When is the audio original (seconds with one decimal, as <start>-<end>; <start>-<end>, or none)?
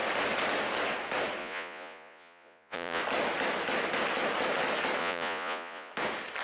0.0-1.4; 3.0-5.0; 5.9-6.4